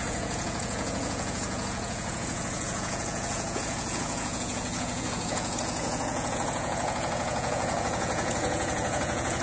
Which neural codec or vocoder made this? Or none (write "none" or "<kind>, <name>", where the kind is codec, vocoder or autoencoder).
vocoder, Vocos